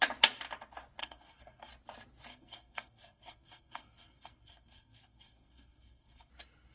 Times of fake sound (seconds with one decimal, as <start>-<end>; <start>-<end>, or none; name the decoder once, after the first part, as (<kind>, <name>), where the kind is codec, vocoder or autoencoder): 1.0-1.7 (codec, SNAC); 2.3-6.3